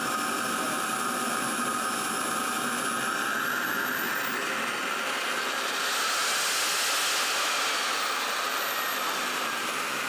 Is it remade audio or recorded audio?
recorded